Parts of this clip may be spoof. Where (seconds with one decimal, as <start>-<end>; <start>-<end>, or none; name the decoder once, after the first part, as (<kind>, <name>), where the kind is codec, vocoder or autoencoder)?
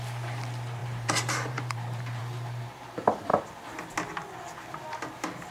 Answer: 0.8-2.2 (vocoder, BigVGAN v2)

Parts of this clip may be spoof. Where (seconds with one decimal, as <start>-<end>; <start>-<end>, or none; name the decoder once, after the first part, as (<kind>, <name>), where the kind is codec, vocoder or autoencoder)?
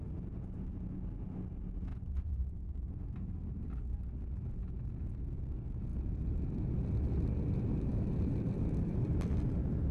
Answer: 5.9-6.4 (vocoder, BigVGAN v2); 7.9-9.3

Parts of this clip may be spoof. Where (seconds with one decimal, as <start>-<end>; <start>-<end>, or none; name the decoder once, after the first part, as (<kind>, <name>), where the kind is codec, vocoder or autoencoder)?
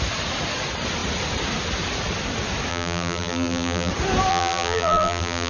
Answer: 2.7-3.9 (vocoder, BigVGAN v2); 4.3-5.5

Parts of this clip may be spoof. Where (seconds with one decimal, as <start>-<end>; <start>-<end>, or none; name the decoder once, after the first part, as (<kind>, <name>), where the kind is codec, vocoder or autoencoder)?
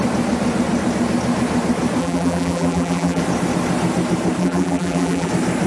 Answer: 2.0-3.2 (vocoder, BigVGAN v2); 4.4-5.3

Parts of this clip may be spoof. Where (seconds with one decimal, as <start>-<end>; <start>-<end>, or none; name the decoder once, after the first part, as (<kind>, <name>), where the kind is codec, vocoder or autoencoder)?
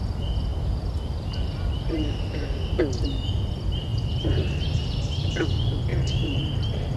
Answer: 5.9-7.0 (vocoder, BigVGAN v2)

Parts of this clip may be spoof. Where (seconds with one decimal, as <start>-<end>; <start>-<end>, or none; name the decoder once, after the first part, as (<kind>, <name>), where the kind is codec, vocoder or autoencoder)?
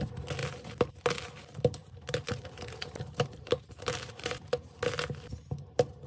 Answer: 1.8-4.7 (vocoder, BigVGAN v2)